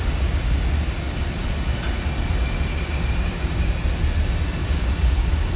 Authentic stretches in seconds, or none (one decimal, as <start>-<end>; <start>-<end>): 0.0-2.7; 3.6-4.6